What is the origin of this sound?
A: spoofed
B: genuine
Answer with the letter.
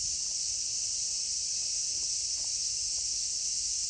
B